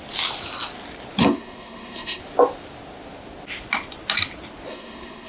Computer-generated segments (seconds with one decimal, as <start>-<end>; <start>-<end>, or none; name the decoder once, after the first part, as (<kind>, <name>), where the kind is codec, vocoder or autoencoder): 1.2-2.2 (codec, SNAC); 4.7-5.3